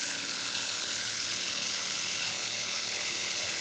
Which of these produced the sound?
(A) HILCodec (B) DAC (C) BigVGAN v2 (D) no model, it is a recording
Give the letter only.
A